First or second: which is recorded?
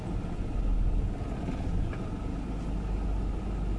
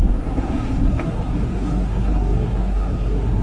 first